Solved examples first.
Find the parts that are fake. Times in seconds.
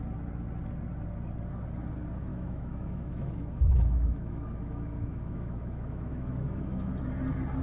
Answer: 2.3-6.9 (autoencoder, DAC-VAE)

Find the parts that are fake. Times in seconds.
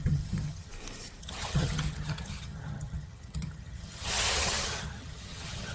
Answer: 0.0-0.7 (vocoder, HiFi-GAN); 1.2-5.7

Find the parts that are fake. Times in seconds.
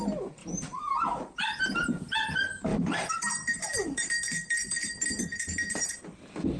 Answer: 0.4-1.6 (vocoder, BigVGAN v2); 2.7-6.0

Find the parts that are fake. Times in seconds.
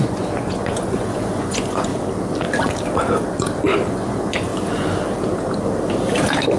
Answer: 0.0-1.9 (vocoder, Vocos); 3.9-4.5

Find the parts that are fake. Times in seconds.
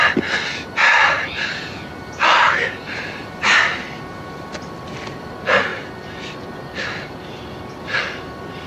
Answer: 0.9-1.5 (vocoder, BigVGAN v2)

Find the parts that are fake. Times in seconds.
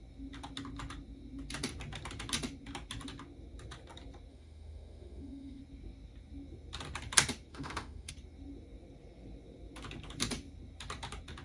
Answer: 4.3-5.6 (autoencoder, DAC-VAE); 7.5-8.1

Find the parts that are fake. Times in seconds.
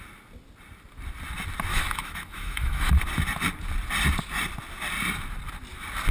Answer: 1.7-2.9 (autoencoder, DAC-VAE)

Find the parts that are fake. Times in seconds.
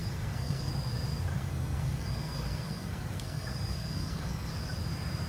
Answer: 0.0-0.7 (codec, SNAC); 1.3-4.5